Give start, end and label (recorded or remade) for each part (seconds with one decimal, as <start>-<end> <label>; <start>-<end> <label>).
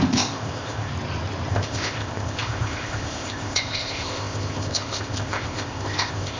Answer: 0.0-0.9 remade; 0.9-1.5 recorded; 1.5-6.4 remade